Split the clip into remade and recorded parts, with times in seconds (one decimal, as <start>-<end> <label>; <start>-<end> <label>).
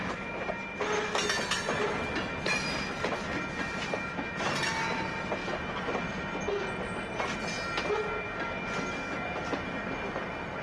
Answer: 0.0-10.6 recorded